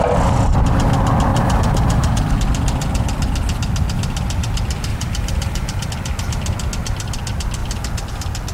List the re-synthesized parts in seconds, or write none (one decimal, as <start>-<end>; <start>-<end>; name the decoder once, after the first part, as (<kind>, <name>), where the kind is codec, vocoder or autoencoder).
1.3-2.3 (vocoder, BigVGAN v2); 4.9-5.9